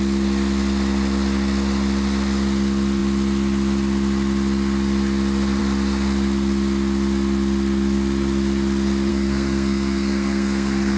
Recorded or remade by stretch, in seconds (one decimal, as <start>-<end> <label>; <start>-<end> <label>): 0.0-9.1 recorded; 9.1-11.0 remade